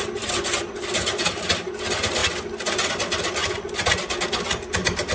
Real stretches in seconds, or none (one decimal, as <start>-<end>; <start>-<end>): 0.0-5.1

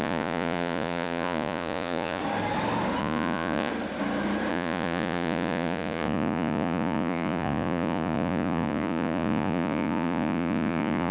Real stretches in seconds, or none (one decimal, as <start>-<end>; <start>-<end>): 2.2-3.0; 3.7-4.5

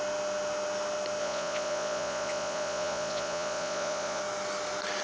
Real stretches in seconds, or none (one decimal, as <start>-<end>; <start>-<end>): 0.0-1.2; 4.2-5.0

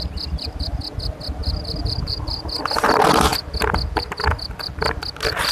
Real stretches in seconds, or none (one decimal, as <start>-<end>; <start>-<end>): 0.0-5.5